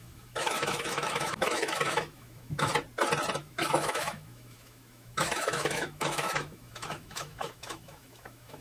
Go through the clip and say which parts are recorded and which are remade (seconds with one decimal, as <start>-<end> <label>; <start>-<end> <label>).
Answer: 0.0-2.7 remade; 2.7-3.4 recorded; 3.4-8.6 remade